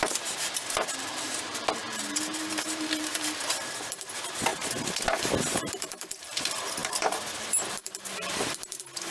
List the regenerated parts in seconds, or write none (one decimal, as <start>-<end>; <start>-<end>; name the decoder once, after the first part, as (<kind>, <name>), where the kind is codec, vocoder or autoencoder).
0.0-4.5 (vocoder, BigVGAN v2); 5.0-9.1